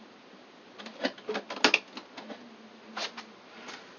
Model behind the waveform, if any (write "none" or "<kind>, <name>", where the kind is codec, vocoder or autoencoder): none